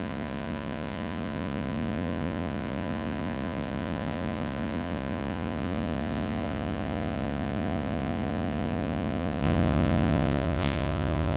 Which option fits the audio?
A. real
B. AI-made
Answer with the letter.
B